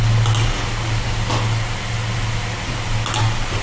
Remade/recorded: recorded